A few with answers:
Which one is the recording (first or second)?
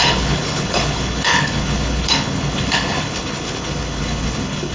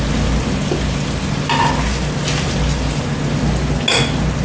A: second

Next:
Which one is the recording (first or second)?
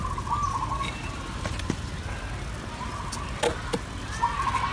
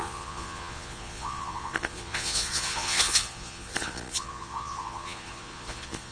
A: first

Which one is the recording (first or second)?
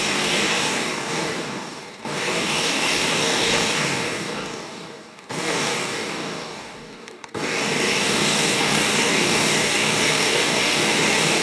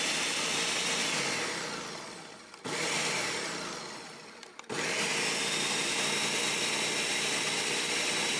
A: second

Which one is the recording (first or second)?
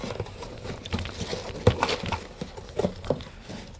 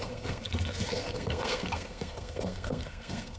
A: first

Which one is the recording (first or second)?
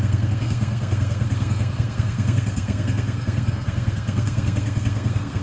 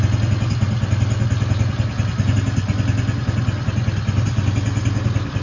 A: second